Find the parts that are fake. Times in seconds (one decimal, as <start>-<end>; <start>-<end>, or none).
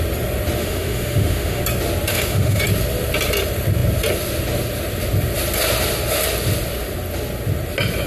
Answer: 0.6-1.6; 2.1-2.6